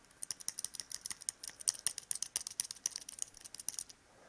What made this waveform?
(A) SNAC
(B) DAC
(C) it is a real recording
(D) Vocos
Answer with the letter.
C